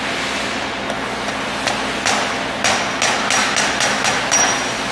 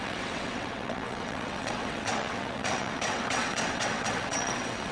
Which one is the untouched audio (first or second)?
first